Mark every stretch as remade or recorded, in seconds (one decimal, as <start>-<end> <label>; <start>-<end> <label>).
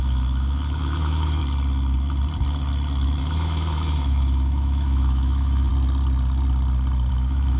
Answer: 0.0-1.4 remade; 1.4-3.2 recorded; 3.2-5.7 remade; 5.7-7.1 recorded; 7.1-7.6 remade